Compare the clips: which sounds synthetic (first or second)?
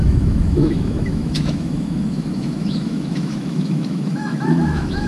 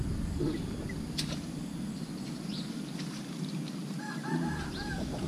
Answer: first